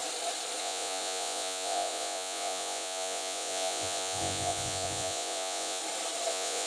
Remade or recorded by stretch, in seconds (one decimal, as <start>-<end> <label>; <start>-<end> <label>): 0.0-0.6 recorded; 0.6-5.8 remade; 5.8-6.3 recorded; 6.3-6.7 remade